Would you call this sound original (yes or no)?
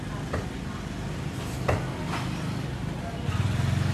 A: yes